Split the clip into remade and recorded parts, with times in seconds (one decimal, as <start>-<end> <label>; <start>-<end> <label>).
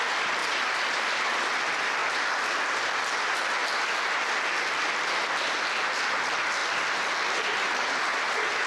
0.0-3.6 remade; 3.6-5.7 recorded; 5.7-6.6 remade; 6.6-8.7 recorded